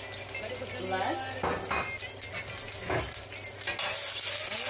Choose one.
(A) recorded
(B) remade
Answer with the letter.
A